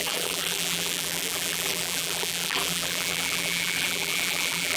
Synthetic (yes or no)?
yes